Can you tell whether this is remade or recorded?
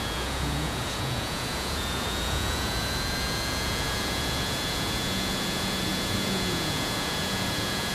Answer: remade